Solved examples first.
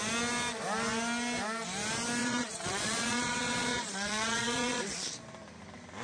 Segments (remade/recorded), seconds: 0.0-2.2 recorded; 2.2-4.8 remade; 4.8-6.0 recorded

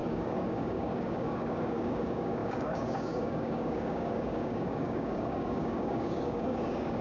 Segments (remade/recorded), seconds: 0.0-7.0 remade

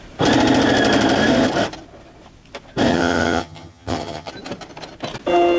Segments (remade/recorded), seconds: 0.0-2.9 recorded; 2.9-4.3 remade; 4.3-5.6 recorded

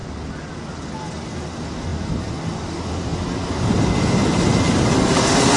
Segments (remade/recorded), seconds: 0.0-1.9 recorded; 1.9-2.6 remade; 2.6-3.1 recorded; 3.1-3.8 remade; 3.8-5.6 recorded